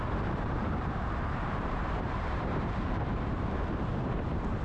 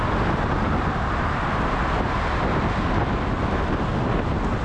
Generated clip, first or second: first